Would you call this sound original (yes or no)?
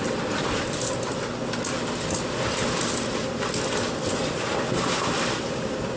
yes